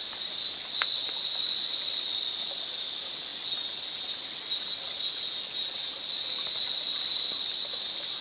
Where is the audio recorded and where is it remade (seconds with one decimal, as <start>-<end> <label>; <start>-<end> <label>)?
0.0-8.2 recorded